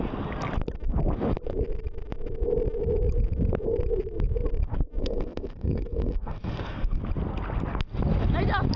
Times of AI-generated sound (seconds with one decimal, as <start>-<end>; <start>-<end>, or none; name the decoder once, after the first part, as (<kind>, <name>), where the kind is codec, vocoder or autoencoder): 5.0-7.0 (codec, SNAC)